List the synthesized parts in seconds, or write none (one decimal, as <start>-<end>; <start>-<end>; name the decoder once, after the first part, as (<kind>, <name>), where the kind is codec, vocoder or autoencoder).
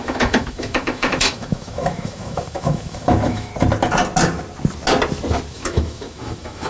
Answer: 0.0-3.5 (autoencoder, DAC-VAE); 5.5-6.7